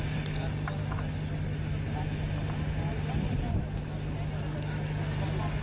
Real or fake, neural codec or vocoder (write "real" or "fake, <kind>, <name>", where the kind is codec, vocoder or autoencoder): real